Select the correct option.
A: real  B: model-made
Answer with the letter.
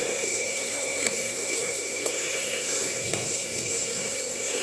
B